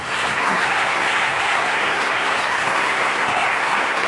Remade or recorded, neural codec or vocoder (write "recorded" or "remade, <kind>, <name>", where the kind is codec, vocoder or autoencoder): remade, codec, SNAC